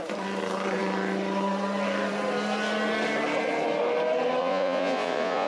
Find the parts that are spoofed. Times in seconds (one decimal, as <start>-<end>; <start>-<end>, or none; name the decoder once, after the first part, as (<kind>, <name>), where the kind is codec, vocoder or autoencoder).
4.4-5.5 (vocoder, Vocos)